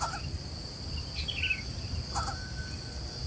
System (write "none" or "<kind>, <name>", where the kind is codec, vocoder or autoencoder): vocoder, BigVGAN v2